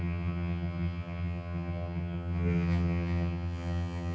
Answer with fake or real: fake